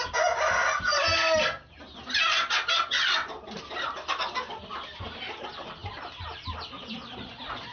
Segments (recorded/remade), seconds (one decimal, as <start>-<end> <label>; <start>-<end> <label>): 0.0-7.7 recorded